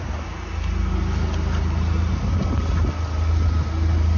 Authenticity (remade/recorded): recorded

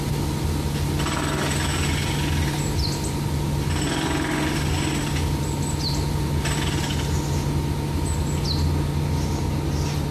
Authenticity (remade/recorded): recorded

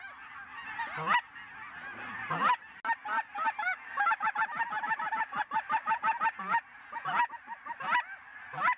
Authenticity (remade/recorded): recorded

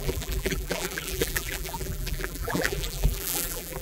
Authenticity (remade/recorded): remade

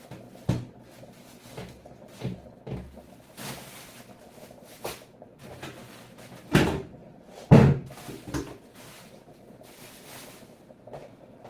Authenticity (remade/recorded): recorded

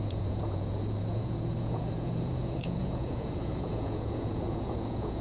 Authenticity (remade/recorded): remade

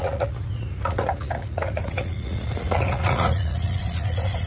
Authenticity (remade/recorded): remade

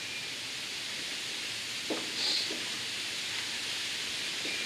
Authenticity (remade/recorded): recorded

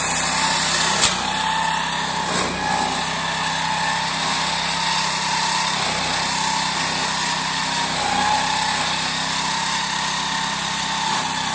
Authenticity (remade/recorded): recorded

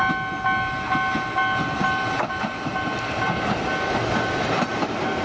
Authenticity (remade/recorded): recorded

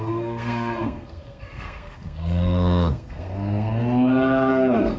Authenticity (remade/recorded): remade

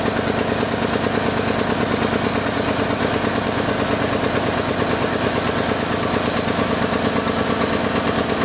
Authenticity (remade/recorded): recorded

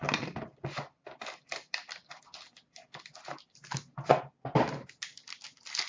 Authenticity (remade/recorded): recorded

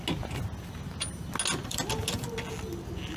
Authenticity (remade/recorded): recorded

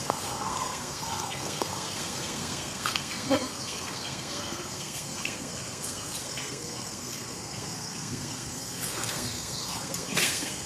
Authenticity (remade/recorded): remade